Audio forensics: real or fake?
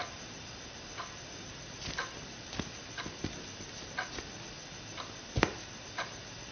real